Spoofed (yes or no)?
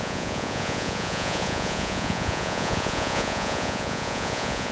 yes